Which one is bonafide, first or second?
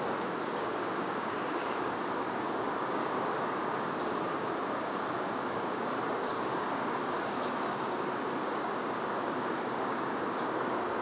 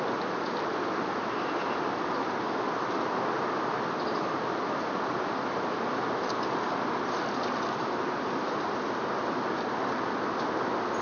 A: second